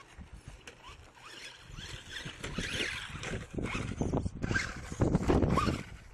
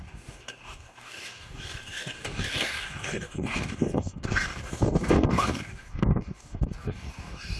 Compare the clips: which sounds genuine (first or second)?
first